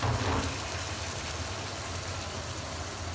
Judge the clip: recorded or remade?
recorded